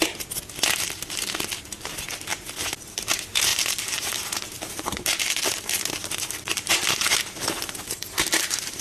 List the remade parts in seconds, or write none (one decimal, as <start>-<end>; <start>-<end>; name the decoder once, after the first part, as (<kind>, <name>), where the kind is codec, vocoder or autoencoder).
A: 3.5-5.9 (vocoder, BigVGAN v2)